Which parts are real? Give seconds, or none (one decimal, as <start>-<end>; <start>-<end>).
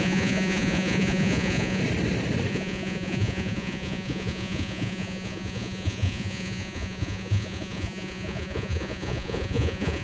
1.8-2.5